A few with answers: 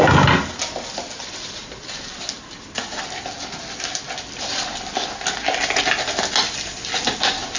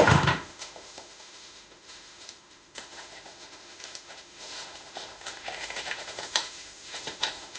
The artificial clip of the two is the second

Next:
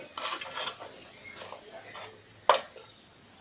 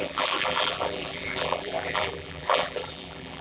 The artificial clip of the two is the second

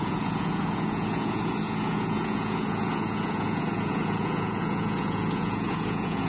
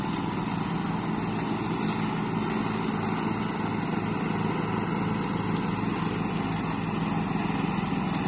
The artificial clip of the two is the first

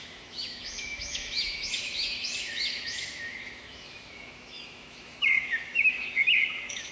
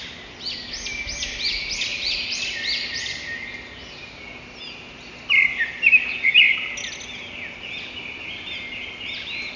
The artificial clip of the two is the first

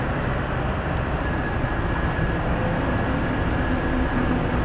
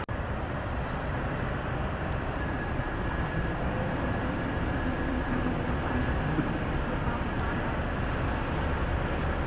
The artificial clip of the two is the second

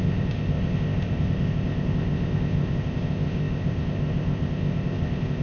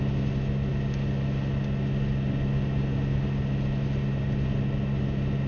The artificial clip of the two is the first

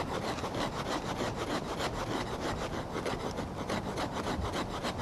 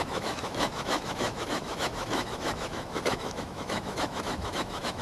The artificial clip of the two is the second